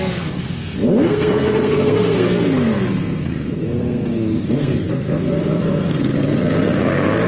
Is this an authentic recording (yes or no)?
no